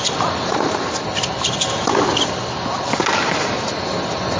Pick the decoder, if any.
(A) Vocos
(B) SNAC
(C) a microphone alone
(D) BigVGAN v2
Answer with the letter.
C